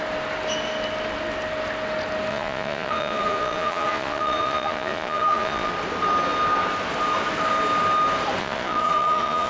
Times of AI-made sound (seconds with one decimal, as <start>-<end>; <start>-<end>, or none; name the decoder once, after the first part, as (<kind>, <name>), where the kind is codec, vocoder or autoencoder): 2.3-5.7 (vocoder, Vocos); 8.4-9.5